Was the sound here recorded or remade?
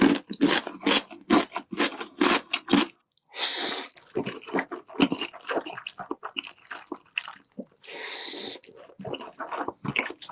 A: recorded